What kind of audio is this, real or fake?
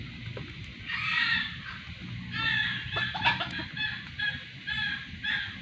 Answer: real